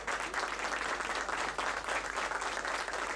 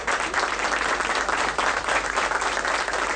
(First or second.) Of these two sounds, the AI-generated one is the second